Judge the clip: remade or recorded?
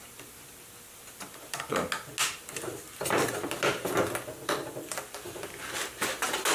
recorded